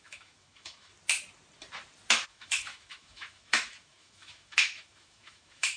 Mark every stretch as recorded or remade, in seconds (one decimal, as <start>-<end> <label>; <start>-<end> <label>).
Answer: 0.0-0.9 remade; 0.9-2.1 recorded; 2.1-5.8 remade